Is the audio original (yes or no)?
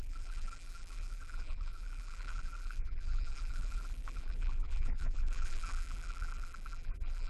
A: no